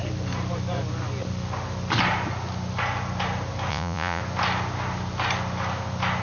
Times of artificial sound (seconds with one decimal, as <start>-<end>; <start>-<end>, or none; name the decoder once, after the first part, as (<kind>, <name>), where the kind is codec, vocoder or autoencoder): 3.7-4.2 (vocoder, Vocos)